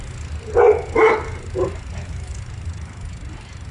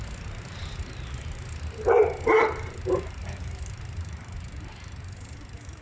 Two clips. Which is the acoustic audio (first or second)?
first